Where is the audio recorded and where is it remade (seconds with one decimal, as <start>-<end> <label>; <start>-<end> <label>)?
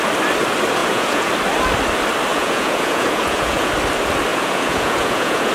0.0-0.8 recorded; 0.8-1.3 remade; 1.3-2.3 recorded; 2.3-3.7 remade; 3.7-4.3 recorded; 4.3-5.5 remade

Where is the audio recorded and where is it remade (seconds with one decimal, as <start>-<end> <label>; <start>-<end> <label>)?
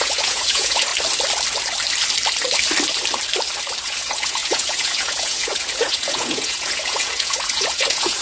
0.0-0.9 remade; 0.9-3.8 recorded; 3.8-8.2 remade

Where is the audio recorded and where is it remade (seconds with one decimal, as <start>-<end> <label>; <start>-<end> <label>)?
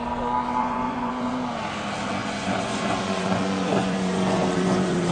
0.0-0.6 recorded; 0.6-1.3 remade; 1.3-2.2 recorded; 2.2-5.1 remade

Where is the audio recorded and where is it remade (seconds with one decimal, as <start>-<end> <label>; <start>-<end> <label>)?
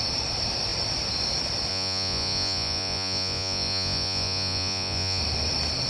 0.0-1.7 recorded; 1.7-5.2 remade; 5.2-5.9 recorded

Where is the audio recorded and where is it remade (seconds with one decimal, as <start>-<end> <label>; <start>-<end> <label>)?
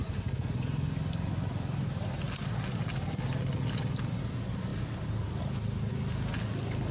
0.0-6.9 recorded